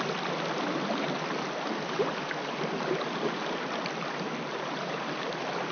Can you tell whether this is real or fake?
real